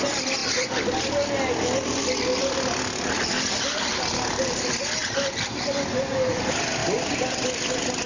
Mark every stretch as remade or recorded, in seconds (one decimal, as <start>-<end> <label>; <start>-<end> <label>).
0.0-2.4 recorded; 2.4-3.9 remade; 3.9-5.0 recorded; 5.0-6.1 remade; 6.1-8.1 recorded